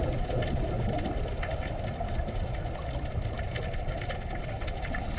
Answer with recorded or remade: recorded